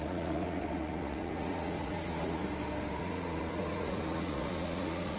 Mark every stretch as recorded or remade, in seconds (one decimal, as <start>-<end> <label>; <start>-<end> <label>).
0.0-2.4 remade; 2.4-3.0 recorded; 3.0-5.2 remade